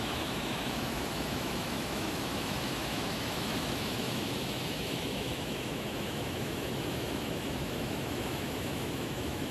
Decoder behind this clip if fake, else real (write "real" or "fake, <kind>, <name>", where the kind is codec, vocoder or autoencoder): fake, autoencoder, DAC-VAE